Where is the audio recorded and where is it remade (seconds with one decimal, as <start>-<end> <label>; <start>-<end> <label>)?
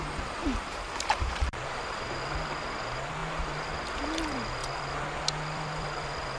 0.0-0.4 recorded; 0.4-2.2 remade; 2.2-3.2 recorded; 3.2-3.7 remade; 3.7-6.4 recorded